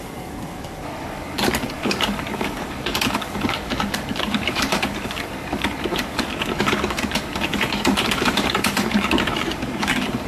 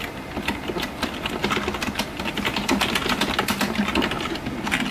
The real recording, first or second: second